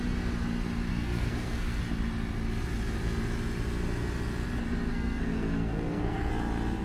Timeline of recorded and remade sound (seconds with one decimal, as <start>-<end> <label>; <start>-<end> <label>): 0.0-0.9 recorded; 0.9-1.8 remade; 1.8-4.9 recorded; 4.9-6.3 remade; 6.3-6.8 recorded